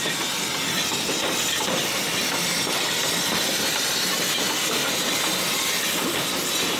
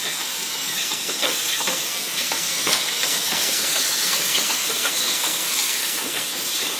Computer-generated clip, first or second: second